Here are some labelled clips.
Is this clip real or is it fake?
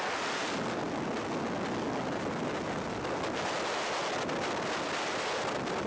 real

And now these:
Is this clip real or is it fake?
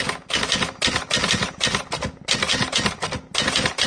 real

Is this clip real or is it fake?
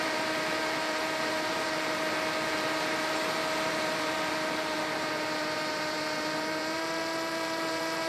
fake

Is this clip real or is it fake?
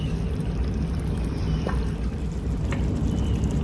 real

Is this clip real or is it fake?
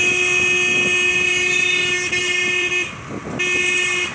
real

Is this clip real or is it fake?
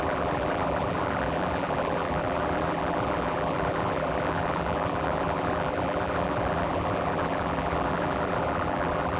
fake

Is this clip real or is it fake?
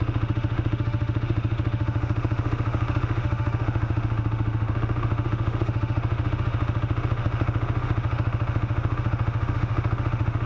fake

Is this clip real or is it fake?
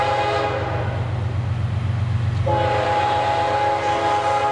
real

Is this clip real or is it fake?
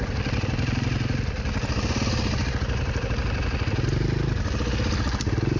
real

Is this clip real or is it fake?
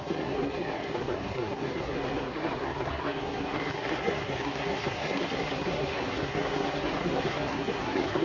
fake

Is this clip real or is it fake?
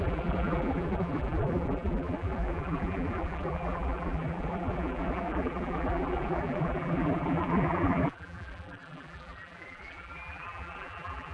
fake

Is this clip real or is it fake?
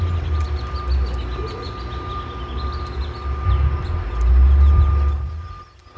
real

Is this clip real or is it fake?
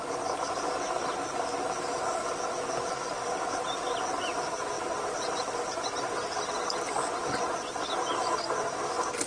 real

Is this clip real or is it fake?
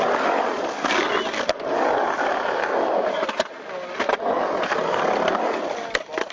real